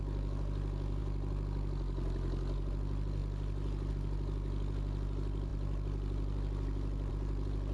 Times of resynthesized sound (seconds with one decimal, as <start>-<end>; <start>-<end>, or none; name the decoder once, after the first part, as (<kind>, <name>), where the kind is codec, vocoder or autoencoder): none